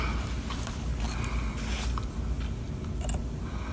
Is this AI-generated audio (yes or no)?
no